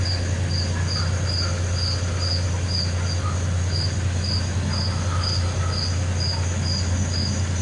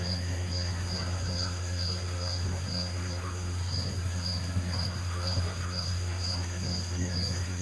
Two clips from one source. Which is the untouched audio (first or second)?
first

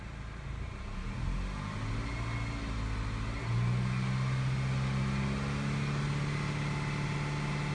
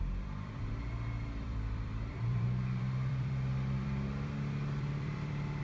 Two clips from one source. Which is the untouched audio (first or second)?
first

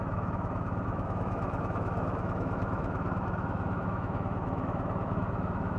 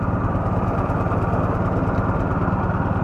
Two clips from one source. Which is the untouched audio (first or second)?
second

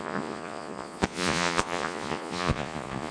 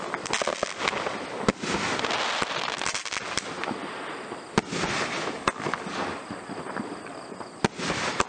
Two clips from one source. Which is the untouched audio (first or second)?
second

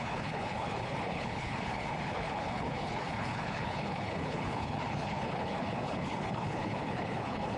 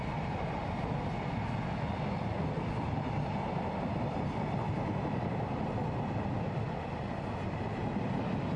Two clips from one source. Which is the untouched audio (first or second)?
second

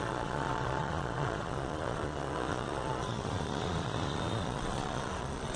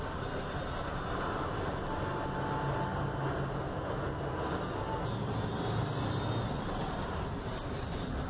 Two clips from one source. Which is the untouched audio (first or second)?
second